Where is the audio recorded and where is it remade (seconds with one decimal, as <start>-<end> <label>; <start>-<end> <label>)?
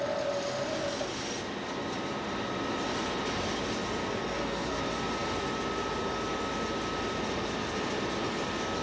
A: 0.0-4.0 recorded; 4.0-4.8 remade; 4.8-8.8 recorded